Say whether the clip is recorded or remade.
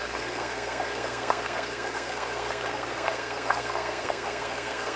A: remade